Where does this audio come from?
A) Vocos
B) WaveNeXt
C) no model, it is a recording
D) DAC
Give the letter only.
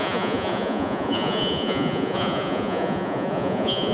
A